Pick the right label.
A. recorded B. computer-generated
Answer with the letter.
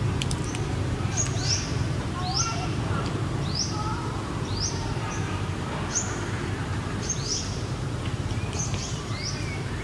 B